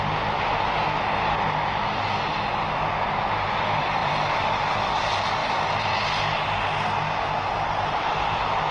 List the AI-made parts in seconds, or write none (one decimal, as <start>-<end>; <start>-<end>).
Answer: 4.0-4.8; 5.4-6.2